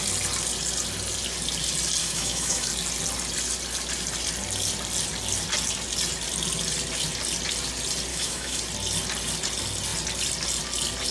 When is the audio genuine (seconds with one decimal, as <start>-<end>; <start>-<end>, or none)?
0.0-2.0; 2.7-8.1; 8.6-11.1